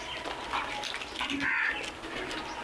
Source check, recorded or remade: recorded